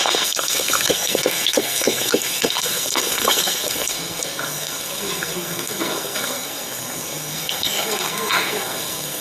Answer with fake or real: fake